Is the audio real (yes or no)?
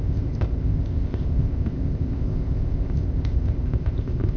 no